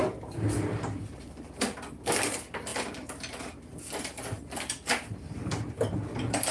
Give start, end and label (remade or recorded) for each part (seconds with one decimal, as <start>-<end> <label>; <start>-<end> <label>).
0.0-6.5 recorded